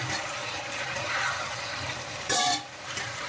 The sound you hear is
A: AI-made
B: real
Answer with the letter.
A